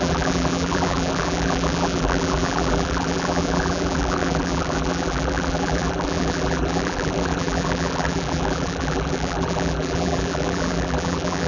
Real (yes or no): no